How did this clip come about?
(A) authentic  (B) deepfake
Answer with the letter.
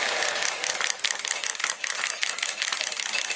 A